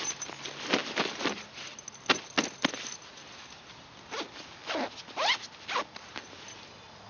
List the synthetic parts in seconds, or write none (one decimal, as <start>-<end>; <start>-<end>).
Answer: none